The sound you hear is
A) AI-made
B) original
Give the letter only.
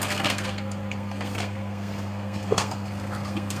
A